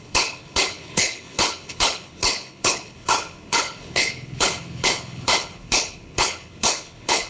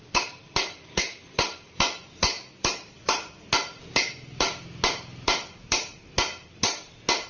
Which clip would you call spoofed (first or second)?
first